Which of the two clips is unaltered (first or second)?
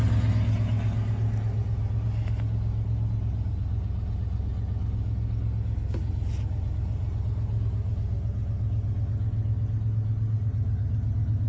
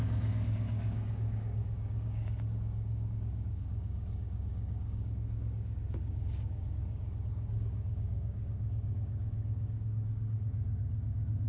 first